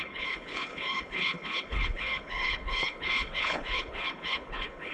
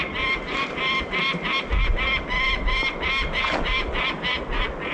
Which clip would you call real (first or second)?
second